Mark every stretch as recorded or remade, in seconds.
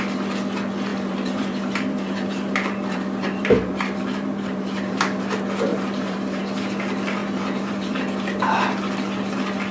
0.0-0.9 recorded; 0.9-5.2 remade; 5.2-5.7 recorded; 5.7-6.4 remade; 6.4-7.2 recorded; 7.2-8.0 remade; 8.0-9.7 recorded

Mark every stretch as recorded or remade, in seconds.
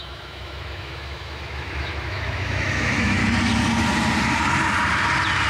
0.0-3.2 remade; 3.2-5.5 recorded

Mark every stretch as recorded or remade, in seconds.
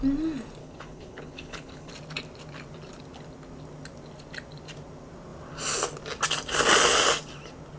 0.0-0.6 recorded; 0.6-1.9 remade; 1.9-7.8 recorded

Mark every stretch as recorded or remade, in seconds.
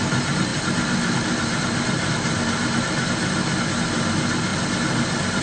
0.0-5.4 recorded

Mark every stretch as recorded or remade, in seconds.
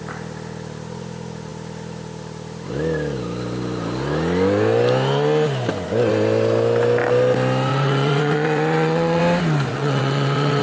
0.0-7.7 recorded; 7.7-9.2 remade; 9.2-9.7 recorded; 9.7-10.6 remade